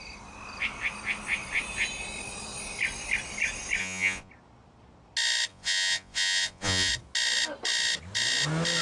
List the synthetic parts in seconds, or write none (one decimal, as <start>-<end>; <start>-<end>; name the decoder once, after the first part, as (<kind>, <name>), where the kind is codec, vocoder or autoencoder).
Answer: 3.8-4.3 (vocoder, Vocos); 5.5-6.9